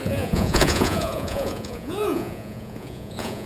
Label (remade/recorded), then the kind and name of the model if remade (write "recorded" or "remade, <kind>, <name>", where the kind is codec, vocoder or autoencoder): remade, vocoder, Vocos